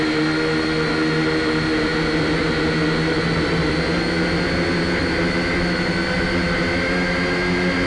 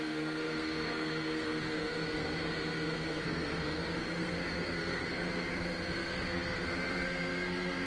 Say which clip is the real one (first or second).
first